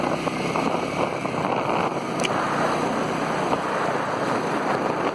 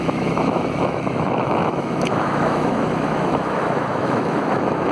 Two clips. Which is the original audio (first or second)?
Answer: first